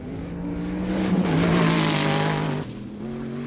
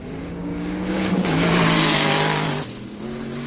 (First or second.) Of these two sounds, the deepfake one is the second